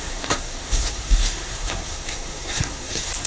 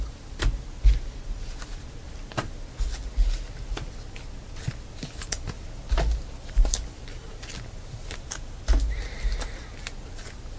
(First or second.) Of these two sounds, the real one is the second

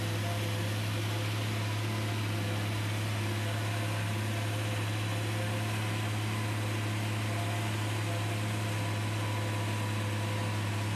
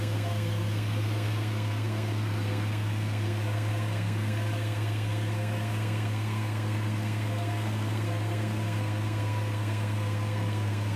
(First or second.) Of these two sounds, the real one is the first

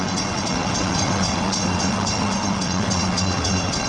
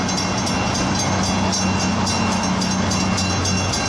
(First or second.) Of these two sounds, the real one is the second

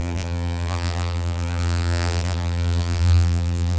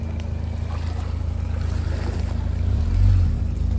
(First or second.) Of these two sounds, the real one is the second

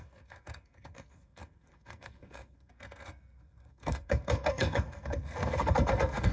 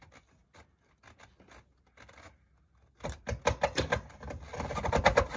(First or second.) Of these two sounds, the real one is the second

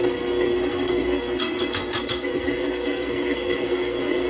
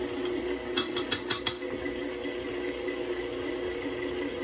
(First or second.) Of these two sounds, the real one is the second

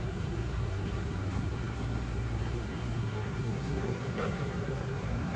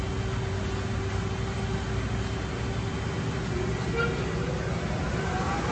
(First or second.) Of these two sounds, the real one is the second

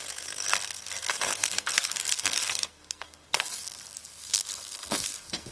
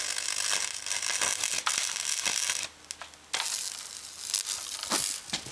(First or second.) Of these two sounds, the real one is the second